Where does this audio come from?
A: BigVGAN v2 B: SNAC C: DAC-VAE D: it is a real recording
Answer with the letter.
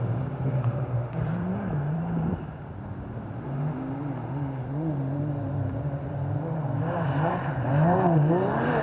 A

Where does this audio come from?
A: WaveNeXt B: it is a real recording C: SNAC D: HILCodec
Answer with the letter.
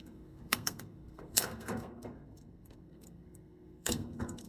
C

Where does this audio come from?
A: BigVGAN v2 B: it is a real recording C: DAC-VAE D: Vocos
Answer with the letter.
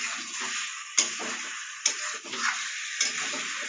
B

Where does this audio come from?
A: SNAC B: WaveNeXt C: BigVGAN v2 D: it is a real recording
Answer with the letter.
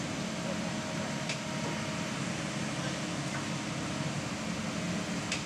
D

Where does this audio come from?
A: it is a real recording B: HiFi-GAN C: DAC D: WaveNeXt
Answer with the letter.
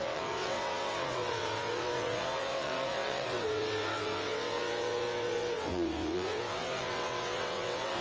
D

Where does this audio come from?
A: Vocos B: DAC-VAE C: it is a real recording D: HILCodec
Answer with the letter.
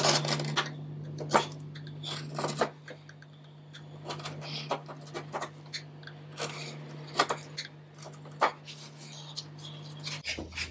C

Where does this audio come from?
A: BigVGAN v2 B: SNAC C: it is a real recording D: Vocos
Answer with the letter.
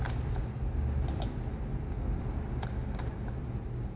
C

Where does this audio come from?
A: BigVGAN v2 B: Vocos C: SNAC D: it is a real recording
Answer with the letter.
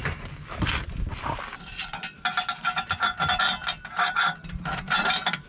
D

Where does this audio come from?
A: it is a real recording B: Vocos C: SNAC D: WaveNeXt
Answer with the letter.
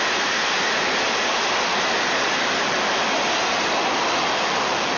A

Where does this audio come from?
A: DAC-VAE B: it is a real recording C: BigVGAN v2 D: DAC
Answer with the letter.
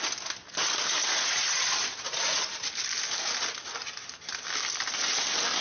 B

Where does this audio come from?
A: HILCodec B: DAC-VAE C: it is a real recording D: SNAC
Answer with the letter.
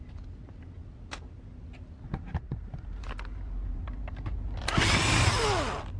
C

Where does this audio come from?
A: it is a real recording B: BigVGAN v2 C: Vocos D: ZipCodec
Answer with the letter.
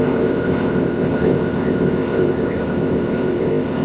D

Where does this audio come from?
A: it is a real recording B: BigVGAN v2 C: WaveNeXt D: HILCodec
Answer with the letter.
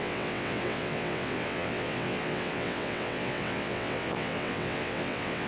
C